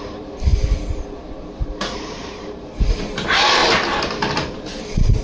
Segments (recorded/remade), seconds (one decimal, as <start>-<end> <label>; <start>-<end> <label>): 0.0-3.6 remade; 3.6-4.5 recorded; 4.5-5.2 remade